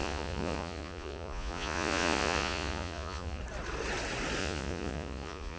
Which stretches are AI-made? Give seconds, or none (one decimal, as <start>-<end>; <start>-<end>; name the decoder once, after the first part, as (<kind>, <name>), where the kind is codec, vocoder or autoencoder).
0.0-3.4 (vocoder, Vocos); 4.4-5.6